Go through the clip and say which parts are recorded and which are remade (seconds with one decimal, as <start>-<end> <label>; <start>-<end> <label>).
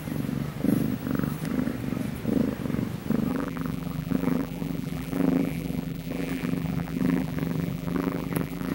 0.0-3.3 recorded; 3.3-8.7 remade